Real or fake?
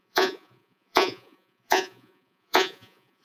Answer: fake